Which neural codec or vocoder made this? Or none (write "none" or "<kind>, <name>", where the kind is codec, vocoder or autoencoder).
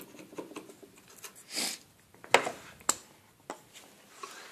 none